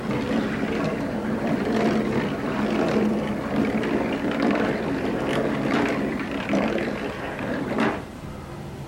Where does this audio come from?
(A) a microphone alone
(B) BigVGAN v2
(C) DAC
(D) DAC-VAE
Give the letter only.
B